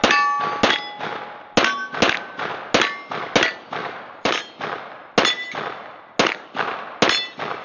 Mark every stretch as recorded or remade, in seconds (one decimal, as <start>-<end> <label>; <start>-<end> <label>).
0.0-3.8 recorded; 3.8-4.4 remade; 4.4-7.6 recorded